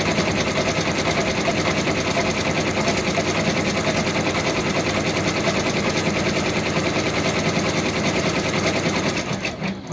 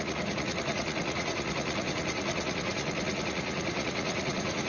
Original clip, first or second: first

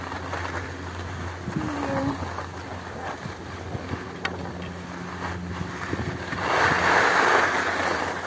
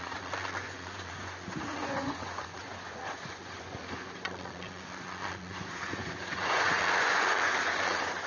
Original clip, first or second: first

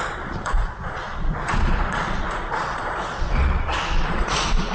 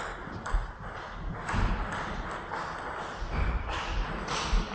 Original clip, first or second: second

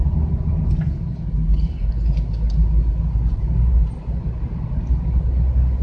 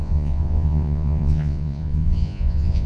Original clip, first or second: first